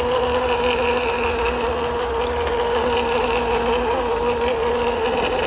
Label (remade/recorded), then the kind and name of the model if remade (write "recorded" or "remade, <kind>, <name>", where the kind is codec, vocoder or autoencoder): recorded